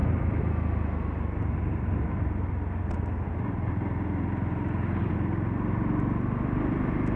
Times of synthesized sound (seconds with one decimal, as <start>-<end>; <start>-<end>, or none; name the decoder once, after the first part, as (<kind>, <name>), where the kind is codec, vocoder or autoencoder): none